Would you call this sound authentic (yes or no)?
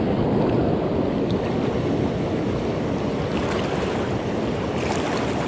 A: yes